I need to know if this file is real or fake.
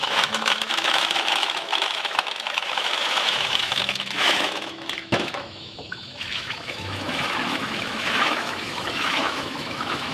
fake